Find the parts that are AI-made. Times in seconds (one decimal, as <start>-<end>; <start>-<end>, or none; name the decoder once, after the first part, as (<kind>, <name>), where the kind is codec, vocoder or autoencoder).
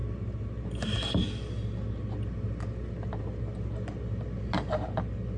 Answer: none